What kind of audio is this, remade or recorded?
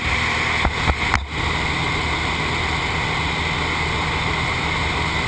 recorded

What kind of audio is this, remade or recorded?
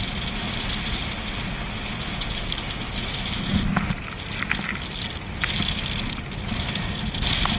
recorded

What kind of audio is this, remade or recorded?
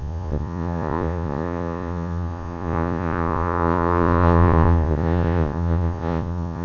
remade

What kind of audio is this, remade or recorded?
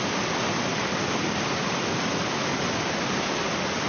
recorded